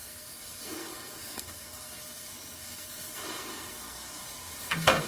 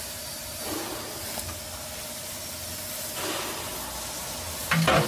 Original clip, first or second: second